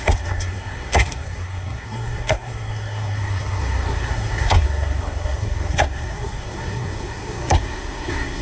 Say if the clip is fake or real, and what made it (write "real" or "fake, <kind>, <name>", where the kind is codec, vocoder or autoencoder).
fake, codec, SNAC